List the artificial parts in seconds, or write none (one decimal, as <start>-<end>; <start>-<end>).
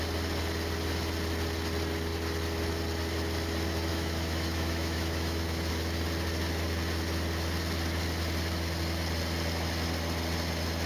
3.9-5.7